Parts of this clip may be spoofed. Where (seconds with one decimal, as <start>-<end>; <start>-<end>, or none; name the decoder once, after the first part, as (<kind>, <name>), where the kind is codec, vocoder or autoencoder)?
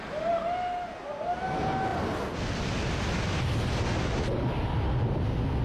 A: none